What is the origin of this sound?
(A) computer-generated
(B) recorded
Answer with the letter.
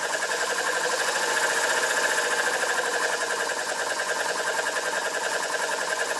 A